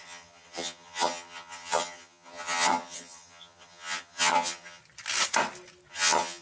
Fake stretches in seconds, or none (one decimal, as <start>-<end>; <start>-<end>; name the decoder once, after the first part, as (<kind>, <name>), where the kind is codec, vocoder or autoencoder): 0.0-4.8 (vocoder, HiFi-GAN); 5.9-6.4